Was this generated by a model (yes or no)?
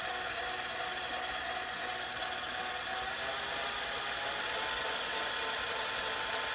no